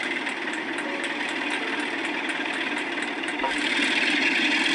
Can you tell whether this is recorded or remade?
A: recorded